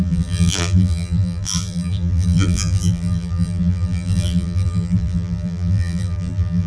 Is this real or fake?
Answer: fake